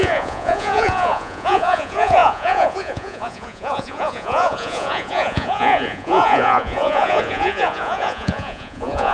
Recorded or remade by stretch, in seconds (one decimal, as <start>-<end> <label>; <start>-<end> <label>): 0.0-9.1 remade